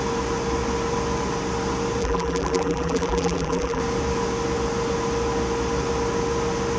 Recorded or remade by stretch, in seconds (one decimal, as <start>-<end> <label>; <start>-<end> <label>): 0.0-2.0 recorded; 2.0-3.8 remade; 3.8-6.8 recorded